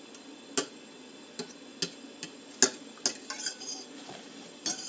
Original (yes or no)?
yes